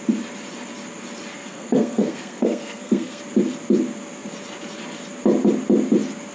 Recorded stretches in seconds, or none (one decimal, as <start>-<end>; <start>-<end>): 0.0-1.3; 3.2-6.3